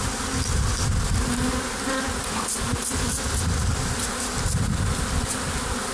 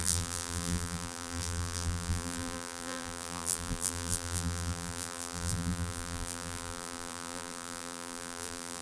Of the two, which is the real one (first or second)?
first